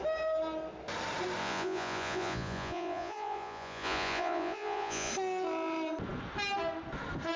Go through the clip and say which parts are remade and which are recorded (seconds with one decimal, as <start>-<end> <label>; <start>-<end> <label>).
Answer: 0.0-1.4 recorded; 1.4-5.1 remade; 5.1-7.4 recorded